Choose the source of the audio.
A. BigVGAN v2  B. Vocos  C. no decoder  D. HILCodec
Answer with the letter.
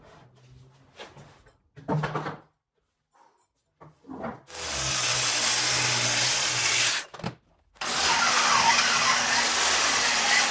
C